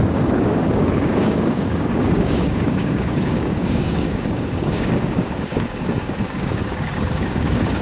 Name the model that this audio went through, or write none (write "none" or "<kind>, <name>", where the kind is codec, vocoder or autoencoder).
codec, DAC